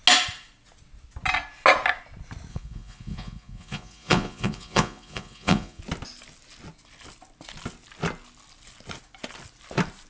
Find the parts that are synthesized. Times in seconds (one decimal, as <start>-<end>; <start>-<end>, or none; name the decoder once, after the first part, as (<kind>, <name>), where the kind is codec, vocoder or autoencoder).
2.5-5.8 (vocoder, Vocos)